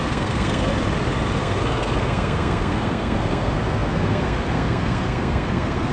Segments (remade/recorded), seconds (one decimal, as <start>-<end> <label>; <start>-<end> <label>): 0.0-0.7 remade; 0.7-1.4 recorded; 1.4-5.9 remade